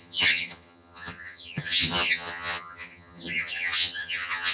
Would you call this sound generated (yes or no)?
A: yes